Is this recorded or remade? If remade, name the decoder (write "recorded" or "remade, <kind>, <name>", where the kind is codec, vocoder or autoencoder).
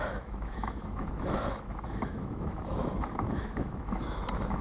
remade, autoencoder, DAC-VAE